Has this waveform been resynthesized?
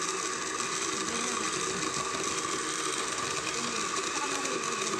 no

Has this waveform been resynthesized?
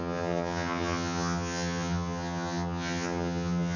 yes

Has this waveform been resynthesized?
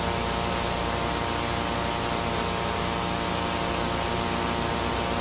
no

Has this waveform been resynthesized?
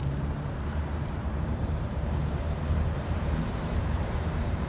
yes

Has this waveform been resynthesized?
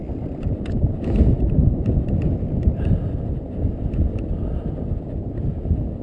no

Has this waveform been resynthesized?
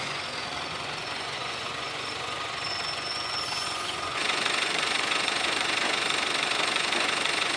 yes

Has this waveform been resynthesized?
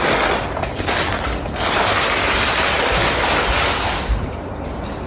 no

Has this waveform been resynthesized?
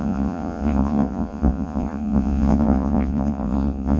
yes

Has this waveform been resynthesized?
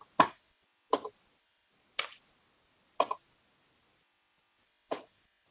no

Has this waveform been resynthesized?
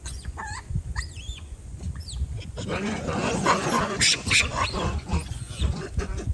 yes